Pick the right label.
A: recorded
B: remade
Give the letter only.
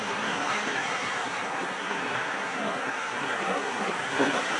B